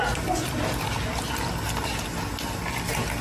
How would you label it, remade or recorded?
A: recorded